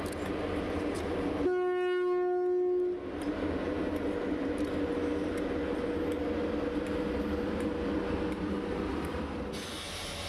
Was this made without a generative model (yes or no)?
yes